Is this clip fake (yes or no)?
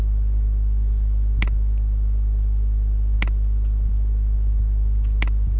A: no